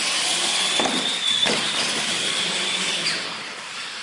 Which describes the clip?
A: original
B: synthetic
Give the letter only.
A